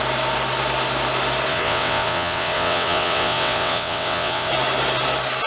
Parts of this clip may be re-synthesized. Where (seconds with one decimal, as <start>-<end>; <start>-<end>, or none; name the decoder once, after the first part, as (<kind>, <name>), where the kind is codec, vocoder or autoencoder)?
1.5-4.5 (vocoder, WaveNeXt)